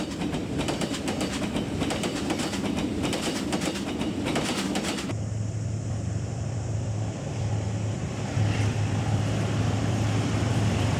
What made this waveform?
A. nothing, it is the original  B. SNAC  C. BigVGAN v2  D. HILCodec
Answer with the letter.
C